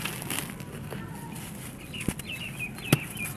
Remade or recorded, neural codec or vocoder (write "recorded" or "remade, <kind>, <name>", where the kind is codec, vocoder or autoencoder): recorded